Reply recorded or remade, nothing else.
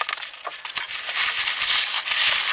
recorded